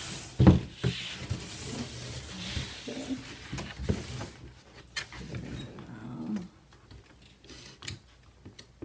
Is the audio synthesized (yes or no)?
no